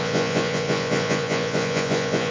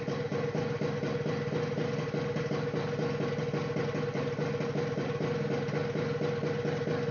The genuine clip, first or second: second